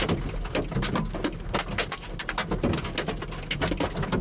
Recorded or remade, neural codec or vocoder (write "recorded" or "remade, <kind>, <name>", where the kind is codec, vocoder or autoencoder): recorded